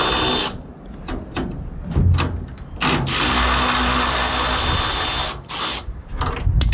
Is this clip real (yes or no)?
yes